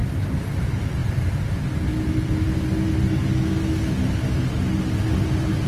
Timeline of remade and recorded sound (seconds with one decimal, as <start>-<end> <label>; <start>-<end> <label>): 0.0-5.7 recorded